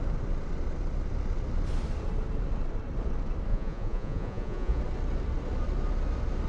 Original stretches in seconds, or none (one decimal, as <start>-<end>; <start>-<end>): 0.0-3.5; 4.8-6.5